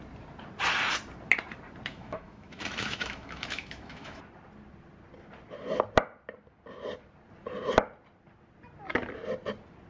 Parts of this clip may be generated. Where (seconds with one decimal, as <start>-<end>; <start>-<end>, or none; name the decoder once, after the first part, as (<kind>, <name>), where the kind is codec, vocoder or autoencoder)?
1.9-4.2 (autoencoder, DAC-VAE)